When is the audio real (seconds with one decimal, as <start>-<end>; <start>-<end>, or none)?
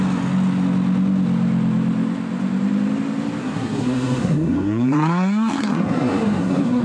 0.0-3.4